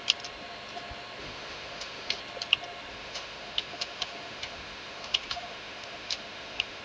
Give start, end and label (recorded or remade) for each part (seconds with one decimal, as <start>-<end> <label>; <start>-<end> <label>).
0.0-1.2 recorded; 1.2-2.2 remade; 2.2-2.9 recorded; 2.9-6.8 remade